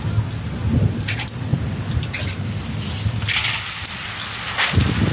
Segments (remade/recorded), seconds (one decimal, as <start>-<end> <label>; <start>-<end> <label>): 0.0-5.1 recorded